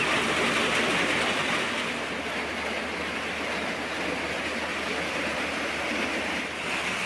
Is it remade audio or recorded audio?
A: recorded